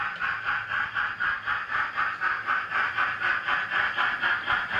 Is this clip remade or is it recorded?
recorded